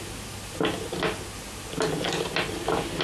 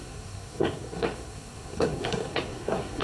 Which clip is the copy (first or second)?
second